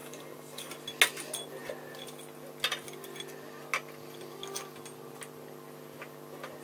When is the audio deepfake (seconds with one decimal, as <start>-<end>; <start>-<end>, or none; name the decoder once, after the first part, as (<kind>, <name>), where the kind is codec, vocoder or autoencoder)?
0.0-0.7 (codec, DAC)